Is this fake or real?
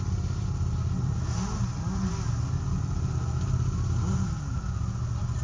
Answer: real